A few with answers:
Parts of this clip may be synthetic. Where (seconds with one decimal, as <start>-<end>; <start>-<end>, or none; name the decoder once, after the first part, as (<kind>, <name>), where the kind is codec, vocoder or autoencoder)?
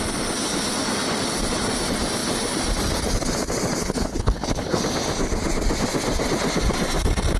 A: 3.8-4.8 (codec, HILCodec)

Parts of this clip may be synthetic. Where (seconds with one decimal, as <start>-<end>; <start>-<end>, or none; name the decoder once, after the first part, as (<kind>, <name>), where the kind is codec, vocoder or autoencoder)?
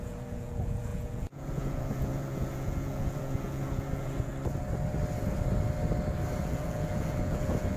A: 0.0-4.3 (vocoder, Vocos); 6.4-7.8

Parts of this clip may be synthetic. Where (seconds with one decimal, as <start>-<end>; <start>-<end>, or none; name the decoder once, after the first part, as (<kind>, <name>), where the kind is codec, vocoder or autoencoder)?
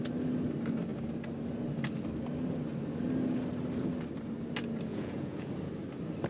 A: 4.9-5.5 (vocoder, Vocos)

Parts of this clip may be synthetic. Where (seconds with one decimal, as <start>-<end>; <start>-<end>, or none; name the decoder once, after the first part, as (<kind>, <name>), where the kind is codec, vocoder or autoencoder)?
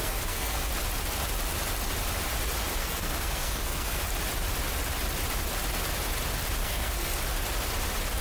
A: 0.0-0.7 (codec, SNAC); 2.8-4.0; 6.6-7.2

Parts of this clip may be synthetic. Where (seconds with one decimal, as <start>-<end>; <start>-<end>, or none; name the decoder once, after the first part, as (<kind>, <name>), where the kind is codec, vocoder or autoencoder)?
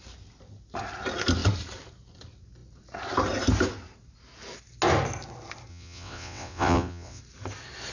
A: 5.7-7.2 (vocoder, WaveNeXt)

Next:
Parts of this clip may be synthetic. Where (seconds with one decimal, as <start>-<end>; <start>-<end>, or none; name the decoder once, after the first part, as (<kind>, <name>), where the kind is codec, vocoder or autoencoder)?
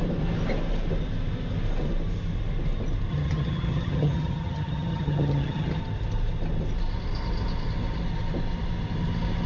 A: 3.1-5.8 (vocoder, HiFi-GAN)